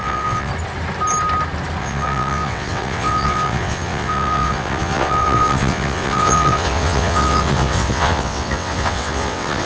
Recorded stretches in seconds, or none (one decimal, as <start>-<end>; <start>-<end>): 0.5-1.8